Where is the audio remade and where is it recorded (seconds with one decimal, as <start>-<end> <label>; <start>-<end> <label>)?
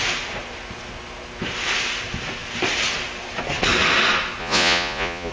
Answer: 0.0-4.4 recorded; 4.4-5.3 remade